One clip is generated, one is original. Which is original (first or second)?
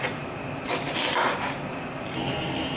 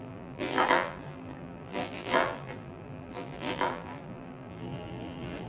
first